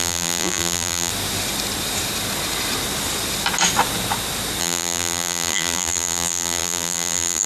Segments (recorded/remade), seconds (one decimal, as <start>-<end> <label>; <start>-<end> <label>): 0.0-1.1 remade; 1.1-4.6 recorded; 4.6-7.5 remade

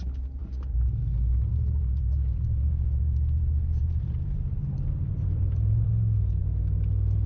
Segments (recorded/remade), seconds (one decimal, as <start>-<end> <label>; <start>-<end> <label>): 0.0-1.5 recorded; 1.5-5.9 remade; 5.9-7.3 recorded

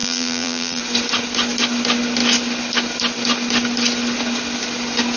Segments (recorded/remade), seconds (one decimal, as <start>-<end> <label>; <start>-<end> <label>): 0.0-0.8 remade; 0.8-5.2 recorded

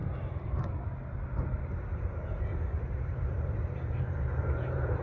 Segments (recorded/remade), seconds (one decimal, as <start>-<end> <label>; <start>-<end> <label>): 0.0-3.0 recorded; 3.0-5.0 remade

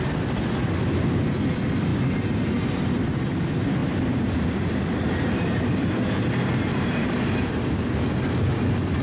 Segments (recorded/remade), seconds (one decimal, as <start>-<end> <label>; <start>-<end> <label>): 0.0-3.8 recorded; 3.8-5.6 remade; 5.6-6.7 recorded; 6.7-7.8 remade; 7.8-9.0 recorded